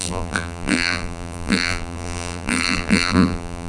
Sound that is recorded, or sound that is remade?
remade